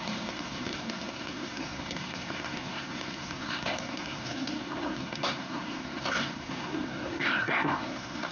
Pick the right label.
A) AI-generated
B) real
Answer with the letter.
A